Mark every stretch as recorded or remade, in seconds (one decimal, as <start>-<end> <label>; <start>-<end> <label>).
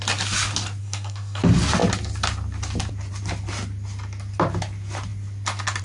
0.0-0.8 recorded; 0.8-1.4 remade; 1.4-5.8 recorded